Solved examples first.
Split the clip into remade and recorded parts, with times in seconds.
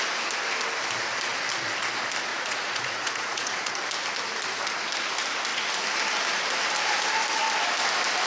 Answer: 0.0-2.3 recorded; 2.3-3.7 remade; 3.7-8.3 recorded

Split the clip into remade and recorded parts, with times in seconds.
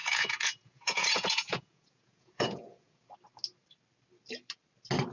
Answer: 0.0-3.1 remade; 3.1-5.1 recorded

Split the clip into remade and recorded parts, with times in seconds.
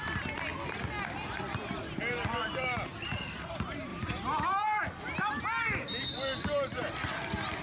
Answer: 0.0-3.9 recorded; 3.9-4.8 remade; 4.8-7.6 recorded